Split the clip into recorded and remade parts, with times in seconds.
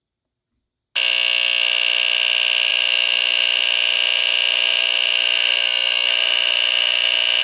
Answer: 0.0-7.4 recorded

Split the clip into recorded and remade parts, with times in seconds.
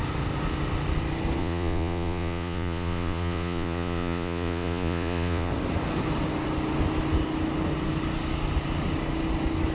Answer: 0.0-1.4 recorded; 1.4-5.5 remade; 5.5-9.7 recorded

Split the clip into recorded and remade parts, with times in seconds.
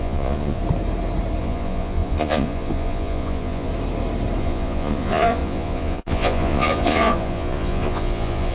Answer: 0.0-0.6 remade; 0.6-1.4 recorded; 1.4-3.7 remade; 3.7-4.4 recorded; 4.4-8.5 remade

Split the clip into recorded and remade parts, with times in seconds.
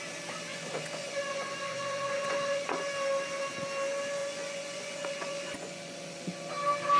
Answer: 0.0-0.5 recorded; 0.5-2.8 remade; 2.8-4.2 recorded; 4.2-6.5 remade; 6.5-7.0 recorded